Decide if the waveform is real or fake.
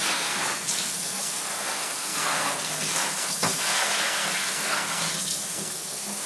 fake